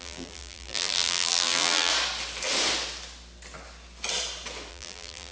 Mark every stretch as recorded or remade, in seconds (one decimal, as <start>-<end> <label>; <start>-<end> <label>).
0.0-1.9 remade; 1.9-4.7 recorded; 4.7-5.3 remade